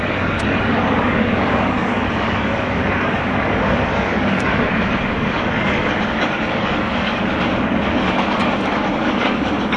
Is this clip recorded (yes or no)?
no